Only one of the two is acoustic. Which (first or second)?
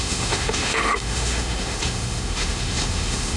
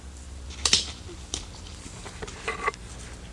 second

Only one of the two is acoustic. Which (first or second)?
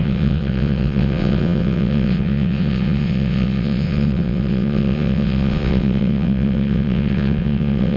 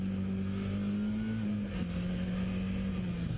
second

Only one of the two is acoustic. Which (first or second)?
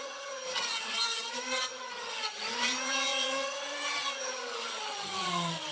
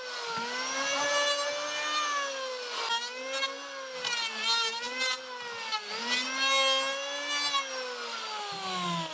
second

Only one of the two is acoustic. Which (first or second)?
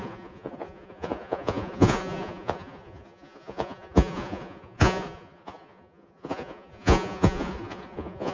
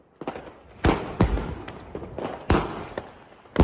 second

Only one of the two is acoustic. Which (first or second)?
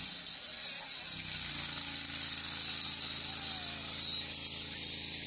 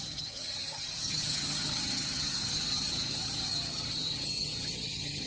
first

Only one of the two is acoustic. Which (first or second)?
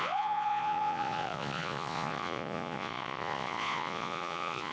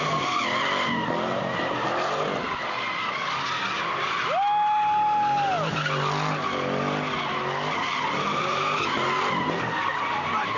second